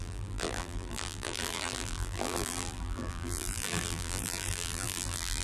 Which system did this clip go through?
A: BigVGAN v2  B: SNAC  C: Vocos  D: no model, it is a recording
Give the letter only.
A